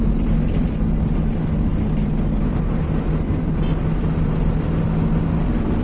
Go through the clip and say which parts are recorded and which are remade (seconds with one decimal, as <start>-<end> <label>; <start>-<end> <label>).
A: 0.0-5.8 recorded